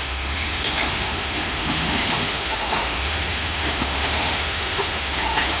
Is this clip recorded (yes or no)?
no